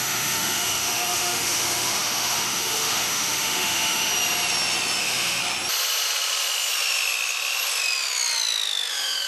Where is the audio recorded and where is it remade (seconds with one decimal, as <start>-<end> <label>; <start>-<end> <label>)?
0.0-4.1 remade; 4.1-5.0 recorded; 5.0-5.4 remade; 5.4-8.9 recorded; 8.9-9.3 remade